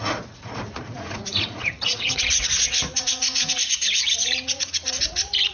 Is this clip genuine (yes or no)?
no